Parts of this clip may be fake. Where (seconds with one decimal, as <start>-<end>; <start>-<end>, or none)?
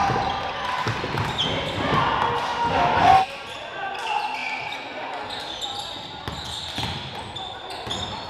none